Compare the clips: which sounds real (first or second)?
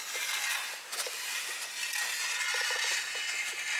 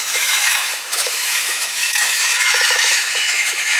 first